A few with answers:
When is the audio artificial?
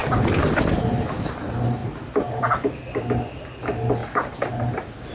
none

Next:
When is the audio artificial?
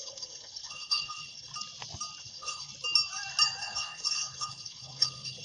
0.0-1.5 (codec, HILCodec); 2.2-2.7; 3.6-5.4